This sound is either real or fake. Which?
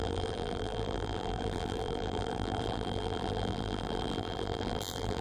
fake